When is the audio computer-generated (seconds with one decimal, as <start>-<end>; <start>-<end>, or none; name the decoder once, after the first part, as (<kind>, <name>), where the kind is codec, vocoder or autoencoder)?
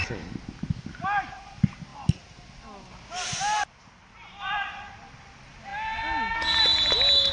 none